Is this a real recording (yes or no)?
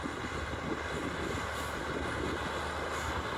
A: yes